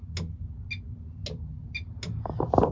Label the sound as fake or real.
real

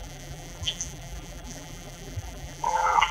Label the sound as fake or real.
fake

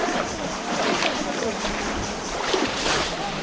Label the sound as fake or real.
fake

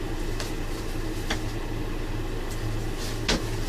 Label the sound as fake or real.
real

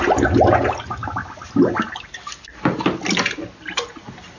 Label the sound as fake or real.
real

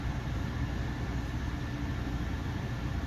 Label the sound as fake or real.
real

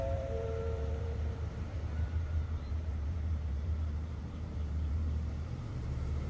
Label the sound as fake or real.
fake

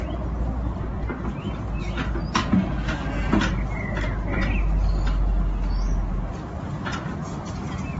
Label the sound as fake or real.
real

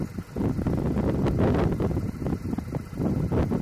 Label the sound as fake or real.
real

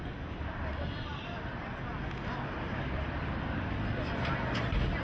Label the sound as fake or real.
real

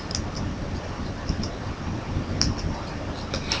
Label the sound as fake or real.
real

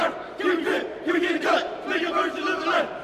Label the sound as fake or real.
fake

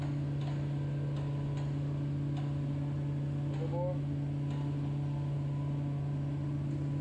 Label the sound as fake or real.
real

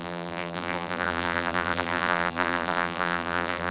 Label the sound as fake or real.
fake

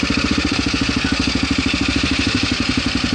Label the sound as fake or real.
fake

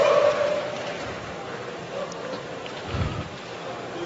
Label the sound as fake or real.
fake